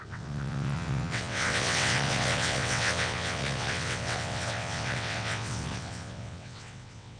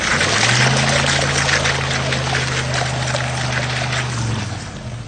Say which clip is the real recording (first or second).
second